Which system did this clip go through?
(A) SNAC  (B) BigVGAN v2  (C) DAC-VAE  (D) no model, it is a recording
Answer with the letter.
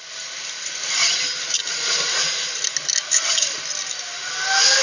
D